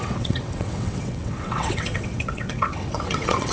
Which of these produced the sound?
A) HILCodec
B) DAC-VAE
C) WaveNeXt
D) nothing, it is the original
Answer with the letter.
C